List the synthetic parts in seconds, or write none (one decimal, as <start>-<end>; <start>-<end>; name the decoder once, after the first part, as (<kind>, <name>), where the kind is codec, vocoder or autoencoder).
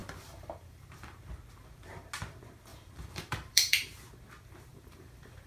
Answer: 0.0-1.3 (vocoder, BigVGAN v2); 2.7-4.0; 4.7-5.5